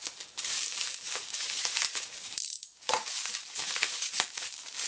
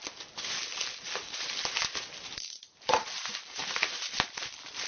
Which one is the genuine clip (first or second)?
second